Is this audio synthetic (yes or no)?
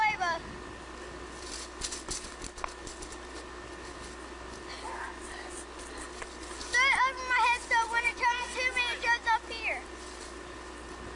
no